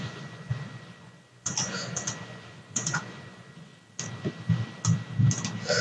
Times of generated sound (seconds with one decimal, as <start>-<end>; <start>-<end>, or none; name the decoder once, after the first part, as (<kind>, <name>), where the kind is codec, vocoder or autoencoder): 0.0-3.7 (vocoder, Vocos)